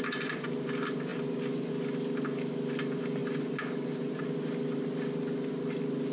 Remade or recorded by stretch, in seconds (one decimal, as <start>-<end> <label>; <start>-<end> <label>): 0.0-6.1 recorded